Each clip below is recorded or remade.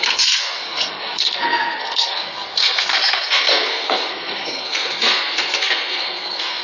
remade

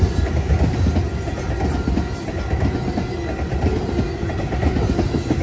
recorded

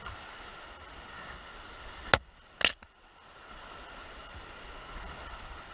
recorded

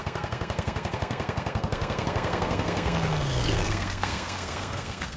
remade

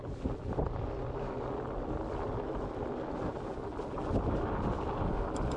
recorded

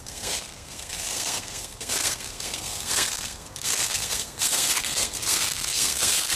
remade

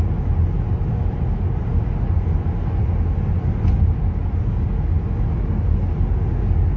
recorded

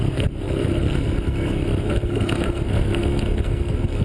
remade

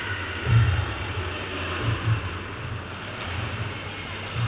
recorded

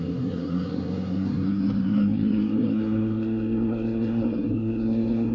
remade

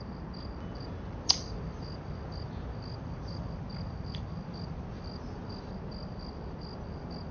recorded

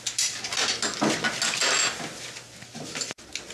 recorded